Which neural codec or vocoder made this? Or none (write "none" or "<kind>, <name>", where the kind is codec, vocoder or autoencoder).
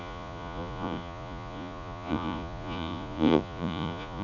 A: vocoder, Vocos